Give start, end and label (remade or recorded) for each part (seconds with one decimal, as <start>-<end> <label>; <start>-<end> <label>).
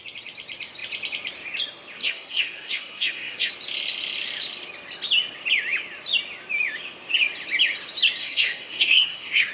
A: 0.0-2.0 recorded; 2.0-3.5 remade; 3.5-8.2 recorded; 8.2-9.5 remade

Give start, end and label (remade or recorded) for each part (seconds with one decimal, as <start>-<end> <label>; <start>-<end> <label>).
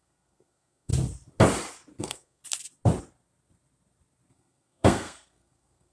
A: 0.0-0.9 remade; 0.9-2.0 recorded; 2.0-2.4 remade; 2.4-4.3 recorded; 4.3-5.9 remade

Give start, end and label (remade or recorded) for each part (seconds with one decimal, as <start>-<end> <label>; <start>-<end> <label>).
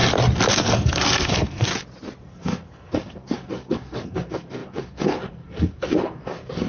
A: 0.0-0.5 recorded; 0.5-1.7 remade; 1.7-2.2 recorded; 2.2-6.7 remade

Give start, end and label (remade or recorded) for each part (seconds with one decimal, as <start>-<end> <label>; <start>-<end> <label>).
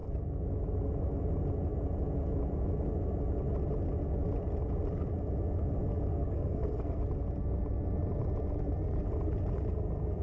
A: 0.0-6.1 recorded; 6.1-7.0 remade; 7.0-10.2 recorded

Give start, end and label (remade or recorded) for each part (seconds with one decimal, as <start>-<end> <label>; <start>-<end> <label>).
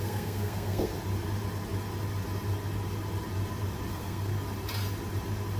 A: 0.0-0.9 remade; 0.9-3.9 recorded; 3.9-4.3 remade; 4.3-5.6 recorded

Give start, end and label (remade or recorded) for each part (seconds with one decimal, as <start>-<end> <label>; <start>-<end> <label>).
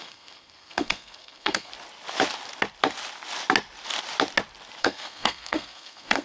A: 0.0-1.7 remade; 1.7-4.8 recorded; 4.8-6.2 remade